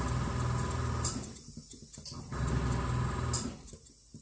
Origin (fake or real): real